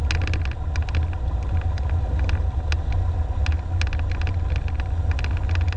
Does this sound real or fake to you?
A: real